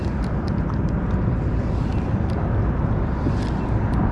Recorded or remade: recorded